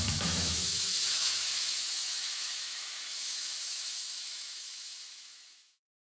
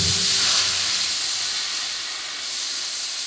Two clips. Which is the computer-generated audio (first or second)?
first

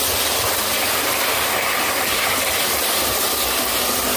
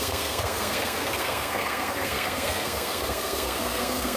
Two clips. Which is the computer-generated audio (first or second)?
second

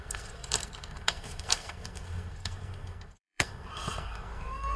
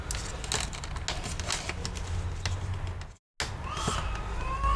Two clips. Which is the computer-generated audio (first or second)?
first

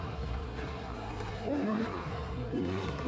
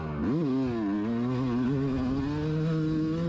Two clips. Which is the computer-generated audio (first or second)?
first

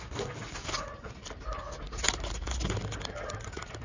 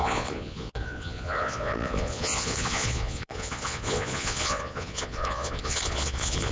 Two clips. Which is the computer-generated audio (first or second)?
second